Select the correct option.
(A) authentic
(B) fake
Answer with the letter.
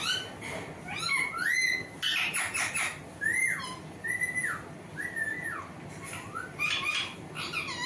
A